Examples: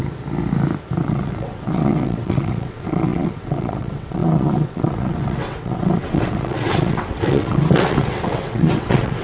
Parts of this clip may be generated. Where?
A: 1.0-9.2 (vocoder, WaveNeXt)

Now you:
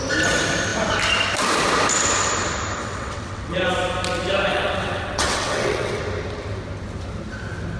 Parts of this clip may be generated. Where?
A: 2.8-3.5 (vocoder, WaveNeXt); 4.5-6.0